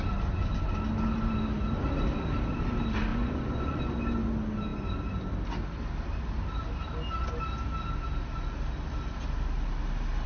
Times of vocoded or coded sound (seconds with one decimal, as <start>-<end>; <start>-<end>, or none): 3.1-3.8